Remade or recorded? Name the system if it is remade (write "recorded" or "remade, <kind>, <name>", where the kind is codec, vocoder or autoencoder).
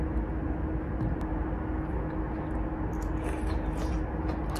recorded